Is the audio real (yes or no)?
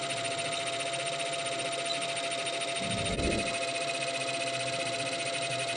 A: yes